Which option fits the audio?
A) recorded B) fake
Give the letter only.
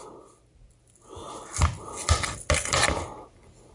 A